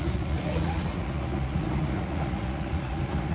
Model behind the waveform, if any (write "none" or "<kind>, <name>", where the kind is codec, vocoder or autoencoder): vocoder, Vocos